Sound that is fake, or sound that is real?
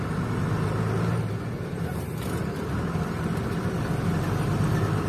real